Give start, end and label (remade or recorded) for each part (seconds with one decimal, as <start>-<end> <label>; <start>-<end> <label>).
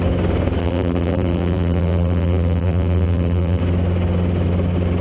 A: 0.0-0.6 recorded; 0.6-3.6 remade; 3.6-5.0 recorded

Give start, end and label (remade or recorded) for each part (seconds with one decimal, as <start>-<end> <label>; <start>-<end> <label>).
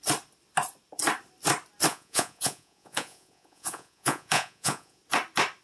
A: 0.0-1.9 recorded; 1.9-5.0 remade; 5.0-5.6 recorded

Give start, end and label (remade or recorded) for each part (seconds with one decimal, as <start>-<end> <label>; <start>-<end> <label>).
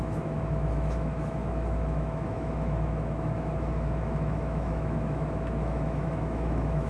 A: 0.0-6.9 remade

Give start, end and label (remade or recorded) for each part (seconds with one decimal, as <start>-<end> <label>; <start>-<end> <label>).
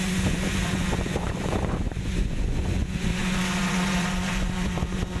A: 0.0-5.2 remade